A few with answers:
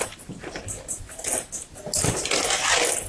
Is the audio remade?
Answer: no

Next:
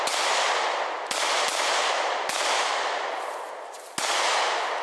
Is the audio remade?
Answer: no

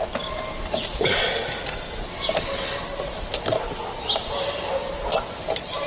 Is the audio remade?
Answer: no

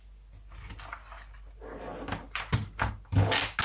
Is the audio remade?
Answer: no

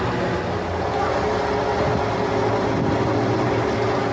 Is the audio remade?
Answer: no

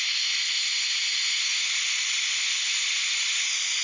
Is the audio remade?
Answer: no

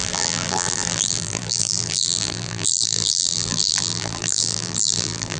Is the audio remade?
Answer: yes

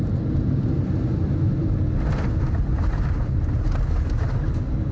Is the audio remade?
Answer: no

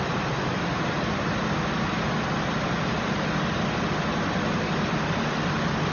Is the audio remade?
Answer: no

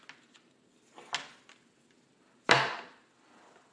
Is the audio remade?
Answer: no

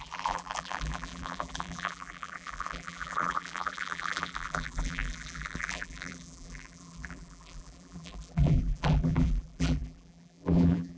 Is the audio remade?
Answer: yes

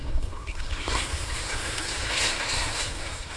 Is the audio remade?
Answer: yes